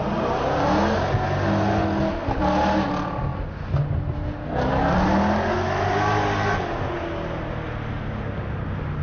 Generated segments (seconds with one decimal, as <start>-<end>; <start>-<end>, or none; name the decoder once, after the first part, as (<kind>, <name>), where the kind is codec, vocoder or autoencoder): none